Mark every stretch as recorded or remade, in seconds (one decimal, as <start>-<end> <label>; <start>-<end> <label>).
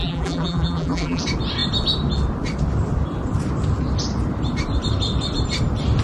0.0-1.2 remade; 1.2-6.0 recorded